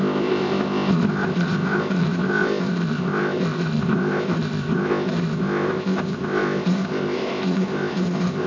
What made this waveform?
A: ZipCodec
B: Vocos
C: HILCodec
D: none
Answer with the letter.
A